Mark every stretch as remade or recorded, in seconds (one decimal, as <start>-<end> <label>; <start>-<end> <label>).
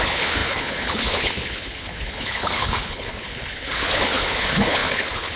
0.0-5.4 remade